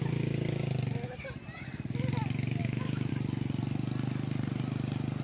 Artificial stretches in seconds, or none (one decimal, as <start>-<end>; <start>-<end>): 2.6-3.1

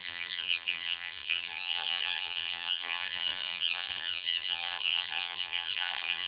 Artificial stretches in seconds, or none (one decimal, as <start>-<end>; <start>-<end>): 0.0-6.3

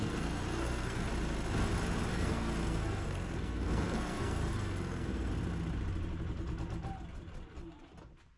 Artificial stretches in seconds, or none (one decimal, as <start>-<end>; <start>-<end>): 0.0-1.1; 2.1-5.3